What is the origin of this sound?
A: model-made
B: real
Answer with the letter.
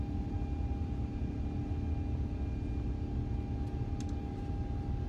B